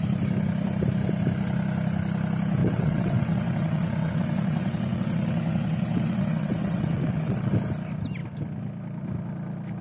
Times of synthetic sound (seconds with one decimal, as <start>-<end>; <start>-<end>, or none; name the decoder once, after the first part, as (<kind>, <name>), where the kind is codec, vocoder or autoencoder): 2.6-7.5 (vocoder, WaveNeXt)